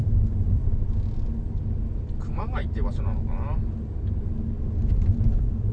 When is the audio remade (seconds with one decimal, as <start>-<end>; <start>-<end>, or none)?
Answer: 0.0-0.6; 2.4-3.2; 4.9-5.7